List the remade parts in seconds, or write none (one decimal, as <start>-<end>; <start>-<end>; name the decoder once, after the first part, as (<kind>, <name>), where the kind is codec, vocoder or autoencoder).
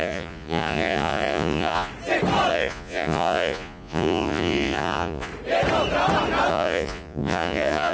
0.0-1.9 (vocoder, Vocos); 2.5-5.3; 6.5-7.9